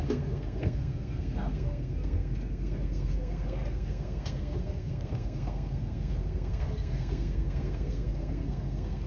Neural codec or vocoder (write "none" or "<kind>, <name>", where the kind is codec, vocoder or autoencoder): codec, SNAC